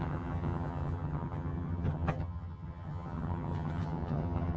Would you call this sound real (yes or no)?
no